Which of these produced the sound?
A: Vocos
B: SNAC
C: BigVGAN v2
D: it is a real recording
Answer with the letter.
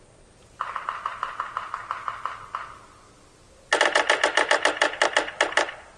D